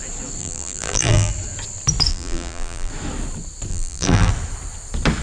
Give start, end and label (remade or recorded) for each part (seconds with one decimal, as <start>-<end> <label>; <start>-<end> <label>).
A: 0.0-0.4 recorded; 0.4-1.3 remade; 1.3-2.1 recorded; 2.1-2.9 remade; 2.9-3.7 recorded; 3.7-4.3 remade; 4.3-5.2 recorded